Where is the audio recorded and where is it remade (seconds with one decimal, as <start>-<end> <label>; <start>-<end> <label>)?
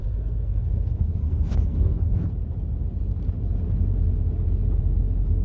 0.0-2.3 remade; 2.3-5.4 recorded